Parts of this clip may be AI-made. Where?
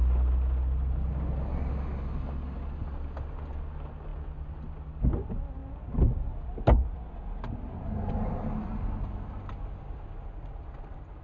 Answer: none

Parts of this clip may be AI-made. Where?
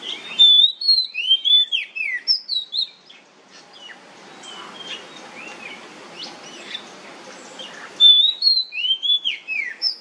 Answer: 7.9-10.0 (autoencoder, DAC-VAE)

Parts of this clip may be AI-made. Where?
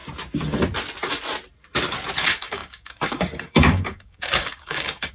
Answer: 2.2-5.1 (codec, DAC)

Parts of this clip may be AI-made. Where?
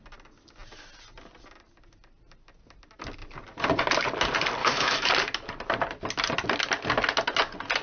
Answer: 4.6-5.1 (autoencoder, DAC-VAE)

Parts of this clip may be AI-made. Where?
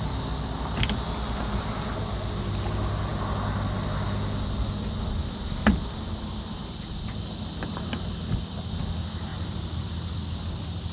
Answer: 9.3-9.9 (vocoder, BigVGAN v2)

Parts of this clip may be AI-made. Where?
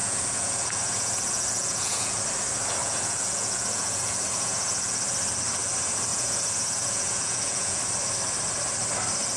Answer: 0.0-2.2 (vocoder, Vocos); 2.8-5.0; 6.1-7.8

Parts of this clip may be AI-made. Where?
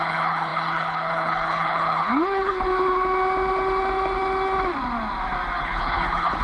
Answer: 0.0-2.7 (codec, HILCodec); 5.6-6.4